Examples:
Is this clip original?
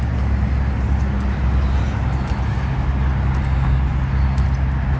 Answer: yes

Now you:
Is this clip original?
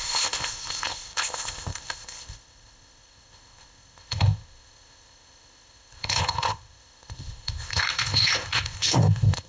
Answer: no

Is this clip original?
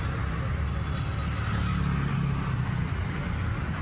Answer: yes